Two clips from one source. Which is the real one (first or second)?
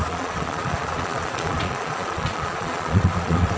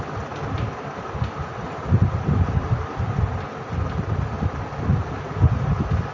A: second